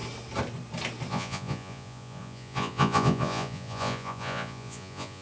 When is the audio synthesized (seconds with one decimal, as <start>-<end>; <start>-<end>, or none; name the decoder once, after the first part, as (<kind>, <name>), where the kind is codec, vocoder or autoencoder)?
1.1-5.2 (vocoder, Vocos)